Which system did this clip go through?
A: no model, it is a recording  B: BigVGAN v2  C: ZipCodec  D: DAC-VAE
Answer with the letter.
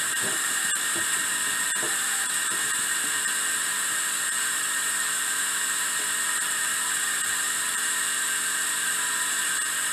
B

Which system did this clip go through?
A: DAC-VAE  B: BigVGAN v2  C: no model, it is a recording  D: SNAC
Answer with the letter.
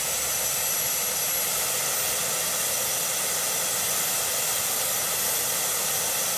C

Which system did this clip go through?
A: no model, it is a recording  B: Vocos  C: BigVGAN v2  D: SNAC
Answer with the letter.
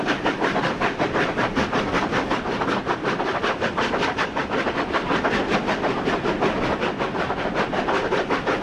A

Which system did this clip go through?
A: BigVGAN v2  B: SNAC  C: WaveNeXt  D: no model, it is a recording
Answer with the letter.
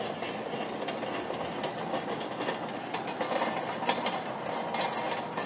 D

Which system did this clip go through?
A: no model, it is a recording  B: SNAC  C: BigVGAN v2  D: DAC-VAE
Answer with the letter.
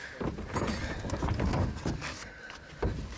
A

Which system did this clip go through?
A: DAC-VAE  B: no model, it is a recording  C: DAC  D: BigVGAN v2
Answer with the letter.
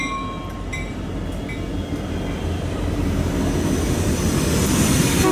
B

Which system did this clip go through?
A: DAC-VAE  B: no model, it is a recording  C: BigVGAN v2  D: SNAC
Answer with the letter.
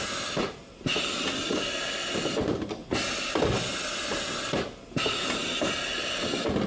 B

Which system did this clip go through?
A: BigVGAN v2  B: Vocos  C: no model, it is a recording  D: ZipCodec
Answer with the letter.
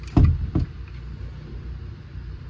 A